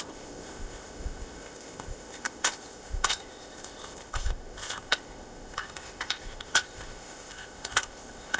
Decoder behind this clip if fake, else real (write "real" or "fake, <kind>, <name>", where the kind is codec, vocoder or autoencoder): fake, codec, ZipCodec